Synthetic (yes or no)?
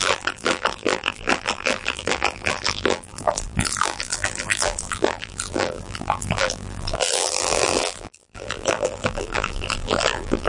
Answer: yes